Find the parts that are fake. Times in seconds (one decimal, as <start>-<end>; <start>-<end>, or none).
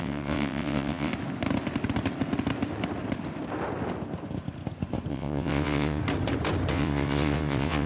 0.0-1.1; 5.1-6.0; 6.7-7.9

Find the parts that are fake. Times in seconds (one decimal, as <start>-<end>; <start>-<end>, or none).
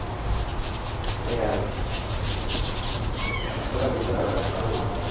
0.5-1.0; 1.5-4.6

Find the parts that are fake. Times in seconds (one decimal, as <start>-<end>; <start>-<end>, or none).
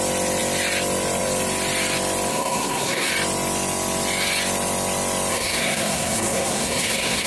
2.3-3.1; 5.3-7.3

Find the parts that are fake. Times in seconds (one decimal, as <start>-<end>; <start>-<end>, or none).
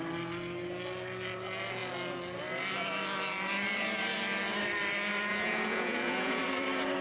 5.3-6.4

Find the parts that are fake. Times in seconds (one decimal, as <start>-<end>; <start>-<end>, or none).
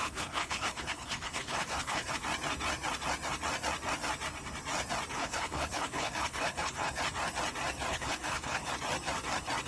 0.0-2.1; 5.1-7.0; 7.9-8.7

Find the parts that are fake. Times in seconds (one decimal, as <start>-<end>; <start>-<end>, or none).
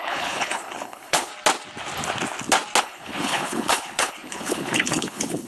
0.0-1.3; 2.8-5.5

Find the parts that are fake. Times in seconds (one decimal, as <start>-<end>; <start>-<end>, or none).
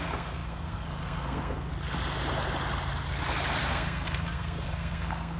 0.0-1.7; 3.7-5.4